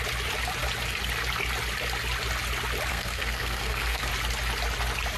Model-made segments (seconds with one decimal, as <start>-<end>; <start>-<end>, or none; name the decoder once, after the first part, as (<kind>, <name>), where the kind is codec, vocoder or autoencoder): 2.9-4.1 (codec, SNAC)